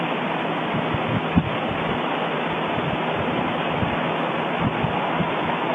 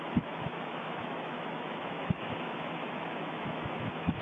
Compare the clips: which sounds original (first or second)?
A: first